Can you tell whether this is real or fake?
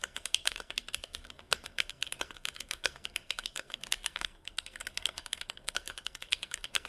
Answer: fake